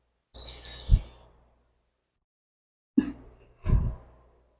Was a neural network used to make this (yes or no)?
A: no